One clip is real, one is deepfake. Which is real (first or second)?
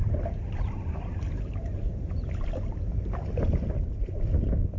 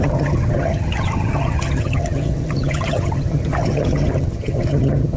first